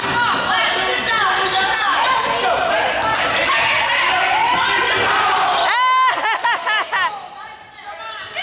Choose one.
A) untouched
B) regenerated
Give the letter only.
A